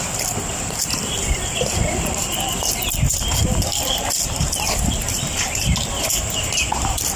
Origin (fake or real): fake